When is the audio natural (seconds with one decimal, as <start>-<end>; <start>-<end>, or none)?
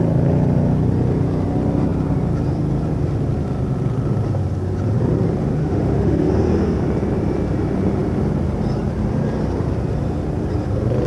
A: 0.0-5.6; 6.3-11.1